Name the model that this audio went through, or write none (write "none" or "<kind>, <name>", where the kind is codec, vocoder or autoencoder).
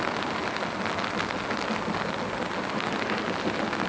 none